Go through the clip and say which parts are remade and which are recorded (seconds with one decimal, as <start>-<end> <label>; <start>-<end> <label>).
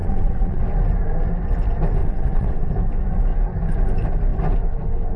0.0-0.6 remade; 0.6-2.0 recorded; 2.0-2.7 remade; 2.7-5.2 recorded